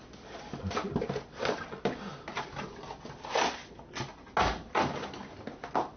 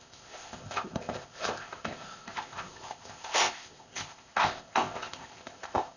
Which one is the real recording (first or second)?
first